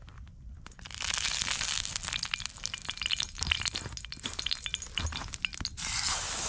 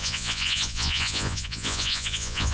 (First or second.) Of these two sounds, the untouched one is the first